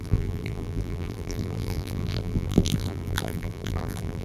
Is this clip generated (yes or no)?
yes